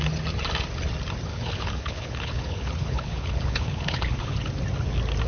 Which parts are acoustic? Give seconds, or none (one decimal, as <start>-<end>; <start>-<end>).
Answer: 0.0-1.3; 4.5-5.3